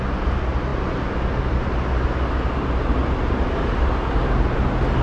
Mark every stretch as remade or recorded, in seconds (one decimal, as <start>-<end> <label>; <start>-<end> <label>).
0.0-3.0 recorded; 3.0-3.9 remade; 3.9-5.0 recorded

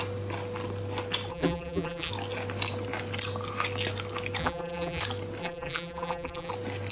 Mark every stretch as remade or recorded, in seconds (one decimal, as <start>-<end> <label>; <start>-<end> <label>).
0.0-1.3 recorded; 1.3-2.1 remade; 2.1-4.4 recorded; 4.4-5.0 remade; 5.0-5.4 recorded; 5.4-6.5 remade; 6.5-6.9 recorded

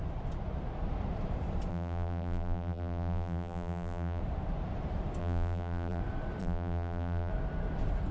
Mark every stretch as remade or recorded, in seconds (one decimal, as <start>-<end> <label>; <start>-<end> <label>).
0.0-1.7 recorded; 1.7-4.2 remade; 4.2-5.2 recorded; 5.2-6.0 remade; 6.0-6.4 recorded; 6.4-7.3 remade; 7.3-8.1 recorded

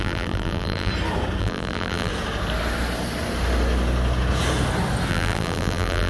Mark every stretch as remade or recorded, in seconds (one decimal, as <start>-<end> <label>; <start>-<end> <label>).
0.0-0.9 remade; 0.9-1.4 recorded; 1.4-2.1 remade; 2.1-5.1 recorded; 5.1-6.1 remade